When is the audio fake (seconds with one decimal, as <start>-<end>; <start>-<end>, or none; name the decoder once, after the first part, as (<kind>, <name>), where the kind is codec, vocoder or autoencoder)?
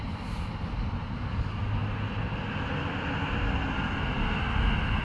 none